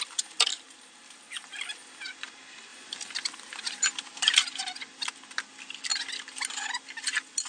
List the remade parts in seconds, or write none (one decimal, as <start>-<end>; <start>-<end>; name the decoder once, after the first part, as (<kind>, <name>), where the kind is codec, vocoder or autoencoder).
0.5-1.6 (vocoder, BigVGAN v2); 2.7-4.4